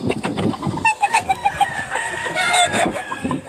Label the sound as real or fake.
fake